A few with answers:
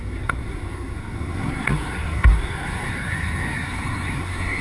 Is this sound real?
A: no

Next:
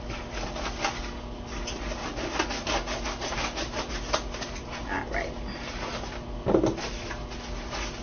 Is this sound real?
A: yes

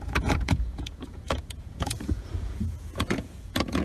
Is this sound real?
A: no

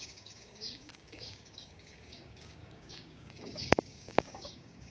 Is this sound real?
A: no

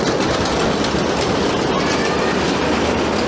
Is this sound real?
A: yes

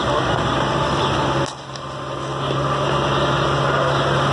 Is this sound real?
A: yes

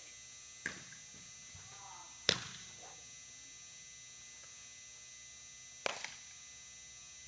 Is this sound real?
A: yes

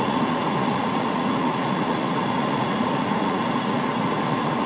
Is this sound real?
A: no